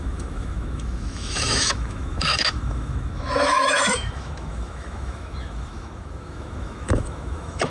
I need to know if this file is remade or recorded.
remade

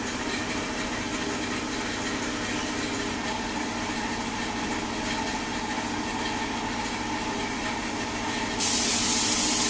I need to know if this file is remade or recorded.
recorded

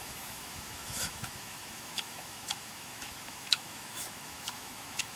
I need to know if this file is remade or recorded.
remade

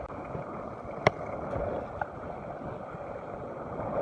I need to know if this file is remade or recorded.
recorded